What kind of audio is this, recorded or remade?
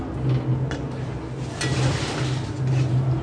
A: recorded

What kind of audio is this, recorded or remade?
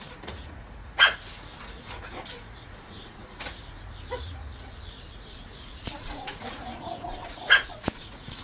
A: remade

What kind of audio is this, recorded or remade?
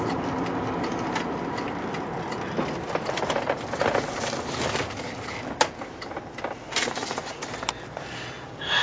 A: recorded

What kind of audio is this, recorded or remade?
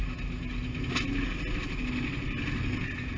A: recorded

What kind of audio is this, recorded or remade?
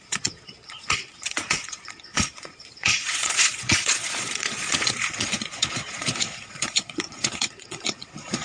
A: remade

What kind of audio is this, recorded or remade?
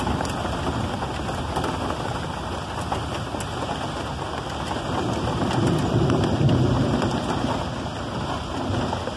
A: recorded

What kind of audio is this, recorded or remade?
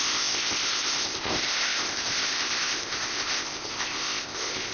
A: remade